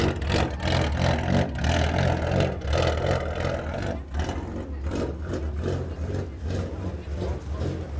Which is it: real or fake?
real